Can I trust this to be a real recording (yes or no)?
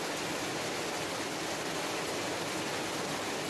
yes